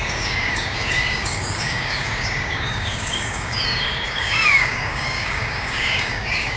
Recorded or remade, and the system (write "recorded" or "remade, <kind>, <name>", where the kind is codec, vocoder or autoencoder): remade, codec, DAC